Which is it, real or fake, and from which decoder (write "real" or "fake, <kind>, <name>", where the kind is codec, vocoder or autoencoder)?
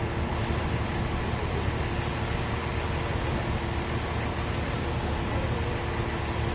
real